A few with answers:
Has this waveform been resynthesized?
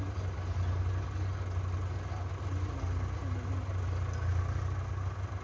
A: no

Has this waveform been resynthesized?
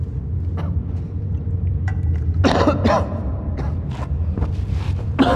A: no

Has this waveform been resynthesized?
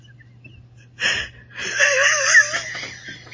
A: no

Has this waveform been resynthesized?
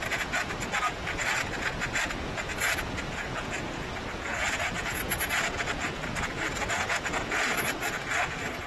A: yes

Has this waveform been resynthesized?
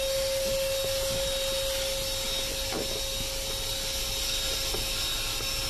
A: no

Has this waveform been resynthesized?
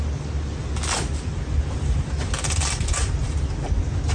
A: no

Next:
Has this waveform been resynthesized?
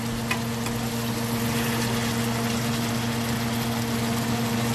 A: no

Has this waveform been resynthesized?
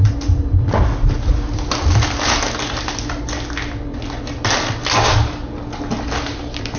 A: no